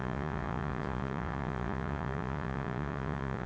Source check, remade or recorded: remade